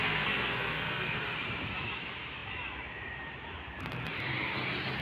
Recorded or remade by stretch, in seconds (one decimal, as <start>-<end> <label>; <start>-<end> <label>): 0.0-1.2 remade; 1.2-5.0 recorded